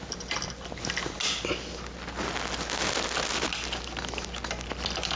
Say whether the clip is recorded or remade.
recorded